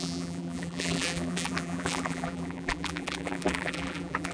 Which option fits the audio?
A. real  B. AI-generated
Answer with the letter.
B